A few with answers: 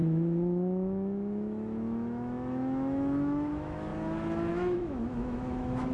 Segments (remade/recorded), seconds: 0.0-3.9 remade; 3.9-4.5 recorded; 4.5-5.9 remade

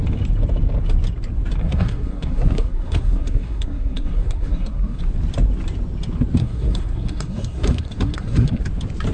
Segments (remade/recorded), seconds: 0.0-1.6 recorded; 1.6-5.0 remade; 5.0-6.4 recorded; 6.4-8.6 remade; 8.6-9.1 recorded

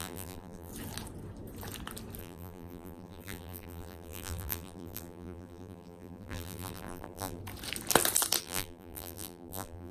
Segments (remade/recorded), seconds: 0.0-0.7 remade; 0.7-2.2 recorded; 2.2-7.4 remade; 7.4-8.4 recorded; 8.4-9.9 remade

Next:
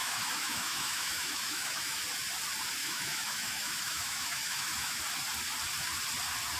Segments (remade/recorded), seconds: 0.0-2.0 remade; 2.0-2.8 recorded; 2.8-5.0 remade; 5.0-6.6 recorded

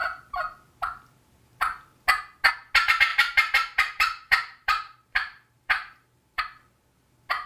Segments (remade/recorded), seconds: 0.0-3.1 recorded; 3.1-6.4 remade; 6.4-7.5 recorded

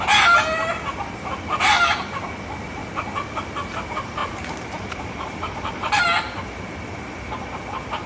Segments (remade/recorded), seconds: 0.0-4.2 recorded; 4.2-6.0 remade; 6.0-8.1 recorded